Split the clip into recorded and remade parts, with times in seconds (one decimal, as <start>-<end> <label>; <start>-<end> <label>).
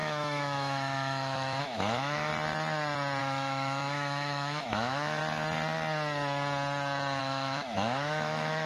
0.0-2.3 remade; 2.3-3.2 recorded; 3.2-5.2 remade; 5.2-7.2 recorded; 7.2-8.7 remade